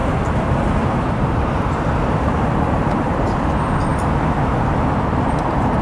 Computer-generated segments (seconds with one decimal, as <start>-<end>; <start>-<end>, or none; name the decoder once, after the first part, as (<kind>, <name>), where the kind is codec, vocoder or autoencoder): 0.0-3.5 (vocoder, BigVGAN v2)